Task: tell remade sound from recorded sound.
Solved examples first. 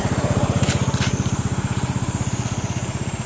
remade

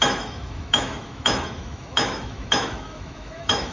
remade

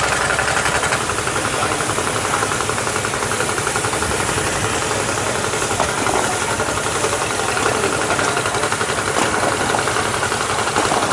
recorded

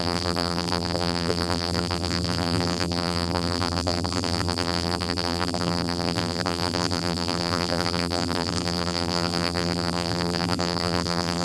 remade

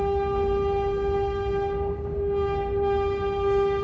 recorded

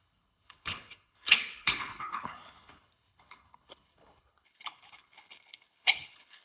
remade